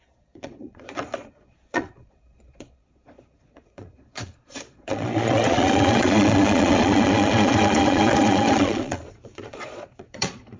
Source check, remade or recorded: remade